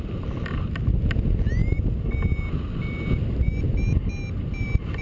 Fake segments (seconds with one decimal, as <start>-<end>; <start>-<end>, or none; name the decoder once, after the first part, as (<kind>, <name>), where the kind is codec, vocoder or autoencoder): none